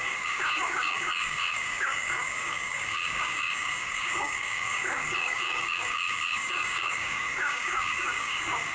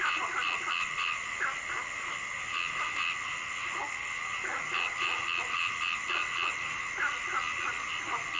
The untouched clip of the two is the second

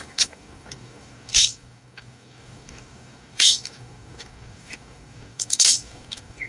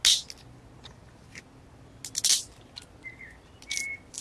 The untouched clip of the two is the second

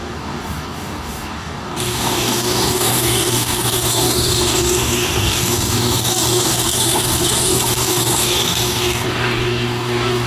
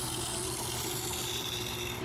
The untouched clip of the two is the second